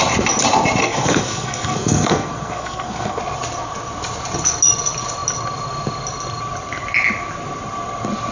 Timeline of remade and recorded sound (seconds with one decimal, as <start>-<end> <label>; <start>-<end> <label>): 0.0-0.8 recorded; 0.8-3.2 remade; 3.2-8.3 recorded